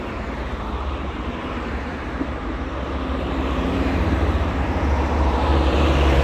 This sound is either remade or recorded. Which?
remade